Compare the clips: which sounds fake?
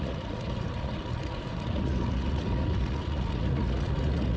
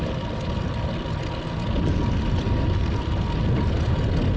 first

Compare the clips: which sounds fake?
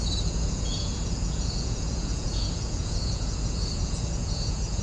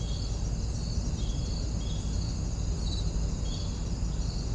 first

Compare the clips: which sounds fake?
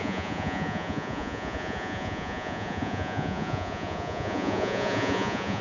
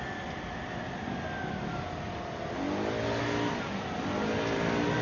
first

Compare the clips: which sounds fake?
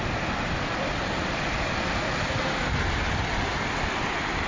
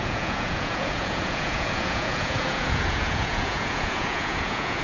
second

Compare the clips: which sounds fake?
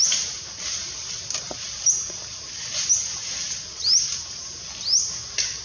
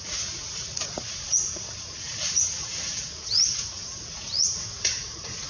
second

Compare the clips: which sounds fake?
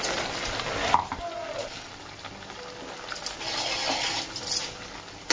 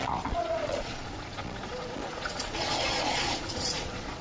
second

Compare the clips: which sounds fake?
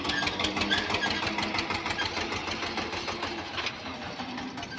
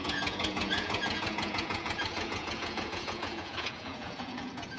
second